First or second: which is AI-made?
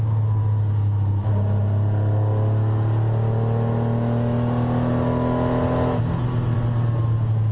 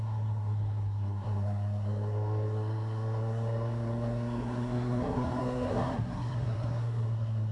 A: second